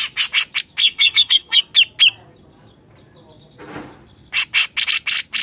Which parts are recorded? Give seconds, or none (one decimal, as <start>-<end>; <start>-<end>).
0.0-0.8; 1.6-5.4